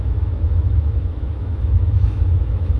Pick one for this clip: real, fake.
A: fake